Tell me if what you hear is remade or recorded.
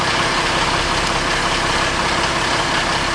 recorded